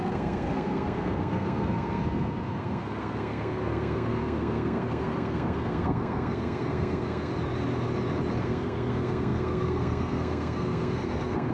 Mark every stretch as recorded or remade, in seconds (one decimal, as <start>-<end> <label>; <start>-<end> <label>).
0.0-7.3 remade; 7.3-8.4 recorded; 8.4-11.5 remade